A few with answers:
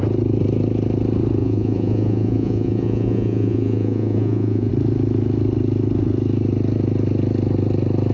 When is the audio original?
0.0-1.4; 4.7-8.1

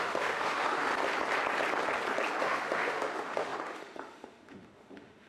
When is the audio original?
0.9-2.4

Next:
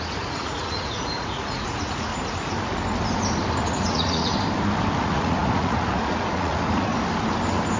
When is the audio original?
2.1-3.7; 4.3-5.0; 6.9-7.8

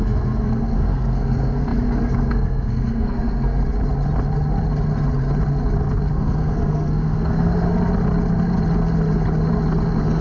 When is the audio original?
3.6-6.1; 7.7-10.2

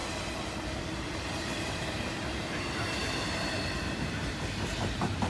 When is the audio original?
0.0-0.8; 3.0-3.8

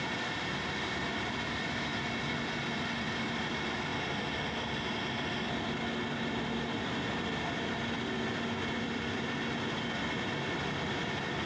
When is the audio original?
0.0-11.5